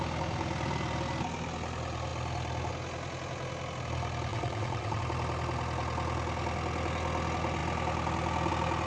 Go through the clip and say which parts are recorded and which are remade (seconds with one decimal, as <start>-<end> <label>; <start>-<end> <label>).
0.0-4.3 recorded; 4.3-5.0 remade; 5.0-8.9 recorded